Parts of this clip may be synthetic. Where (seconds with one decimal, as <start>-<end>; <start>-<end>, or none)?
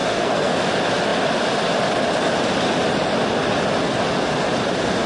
0.0-0.6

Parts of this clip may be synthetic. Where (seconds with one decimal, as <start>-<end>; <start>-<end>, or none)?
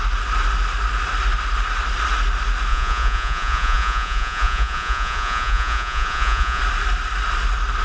2.7-6.6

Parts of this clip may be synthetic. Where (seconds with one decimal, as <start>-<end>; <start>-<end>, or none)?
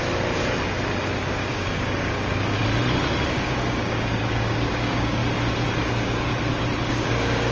1.2-2.6; 3.3-5.2; 5.8-6.3; 6.9-7.5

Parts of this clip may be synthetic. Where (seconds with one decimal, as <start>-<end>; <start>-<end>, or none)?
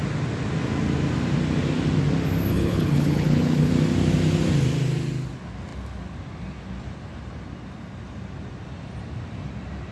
2.5-3.7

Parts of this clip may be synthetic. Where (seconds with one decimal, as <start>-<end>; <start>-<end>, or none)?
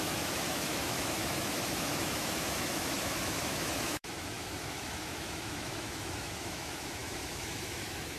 0.0-8.2